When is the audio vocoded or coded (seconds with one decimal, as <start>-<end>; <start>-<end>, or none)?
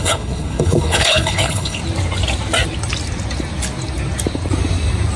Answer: 0.0-1.8